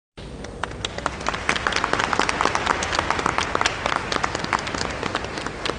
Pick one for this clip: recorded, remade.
recorded